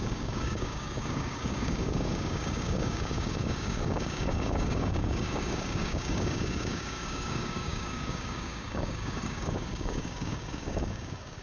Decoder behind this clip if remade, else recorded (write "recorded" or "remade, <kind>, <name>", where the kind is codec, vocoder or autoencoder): remade, codec, DAC